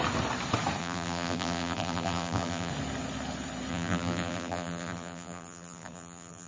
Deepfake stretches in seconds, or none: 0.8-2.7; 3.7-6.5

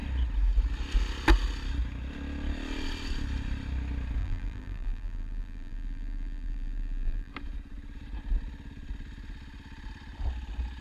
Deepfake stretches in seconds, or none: 4.2-7.3